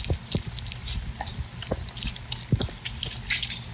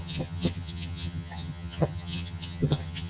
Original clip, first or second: first